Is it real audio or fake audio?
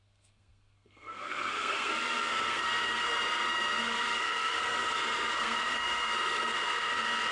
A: fake